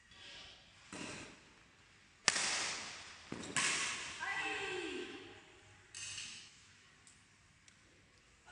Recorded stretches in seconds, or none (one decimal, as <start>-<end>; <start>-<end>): 0.0-4.3; 5.2-6.3; 6.9-8.5